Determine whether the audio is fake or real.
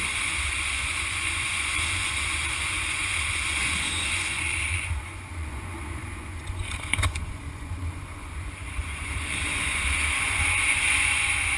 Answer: fake